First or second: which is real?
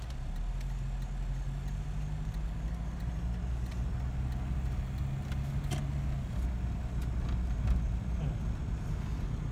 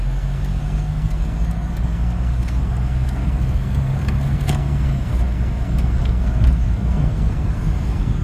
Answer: first